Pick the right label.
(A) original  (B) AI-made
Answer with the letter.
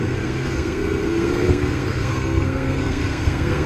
B